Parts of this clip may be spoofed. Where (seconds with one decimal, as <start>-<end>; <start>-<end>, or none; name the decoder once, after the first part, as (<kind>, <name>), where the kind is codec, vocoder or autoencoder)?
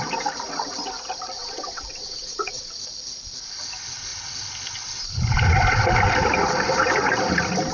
1.4-2.7 (vocoder, WaveNeXt)